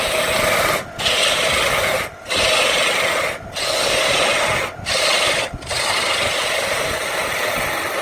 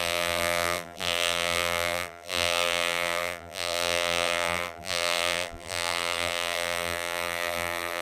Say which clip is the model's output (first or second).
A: second